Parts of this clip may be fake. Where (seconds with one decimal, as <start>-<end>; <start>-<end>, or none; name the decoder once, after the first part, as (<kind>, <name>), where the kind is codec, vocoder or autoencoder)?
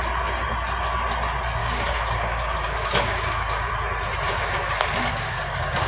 1.6-3.7 (codec, DAC); 5.1-5.9